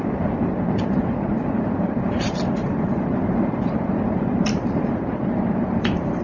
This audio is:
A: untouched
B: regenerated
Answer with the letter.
B